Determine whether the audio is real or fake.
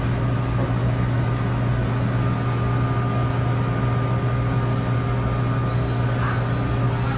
real